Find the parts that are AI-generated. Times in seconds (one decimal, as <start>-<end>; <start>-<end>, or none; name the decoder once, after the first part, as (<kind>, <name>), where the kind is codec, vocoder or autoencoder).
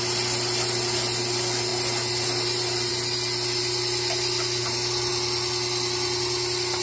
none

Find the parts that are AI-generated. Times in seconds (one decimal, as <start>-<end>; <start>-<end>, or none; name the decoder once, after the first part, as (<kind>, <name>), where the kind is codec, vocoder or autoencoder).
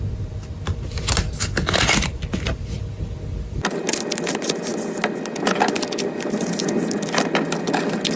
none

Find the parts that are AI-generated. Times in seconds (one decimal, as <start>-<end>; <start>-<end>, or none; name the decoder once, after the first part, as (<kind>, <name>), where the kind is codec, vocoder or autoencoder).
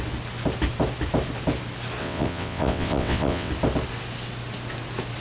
2.0-3.5 (vocoder, WaveNeXt)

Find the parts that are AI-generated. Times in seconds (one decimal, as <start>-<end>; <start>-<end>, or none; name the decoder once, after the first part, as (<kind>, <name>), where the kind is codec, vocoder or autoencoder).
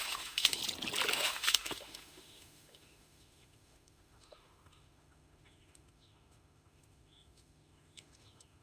0.0-0.6 (autoencoder, DAC-VAE); 1.1-8.6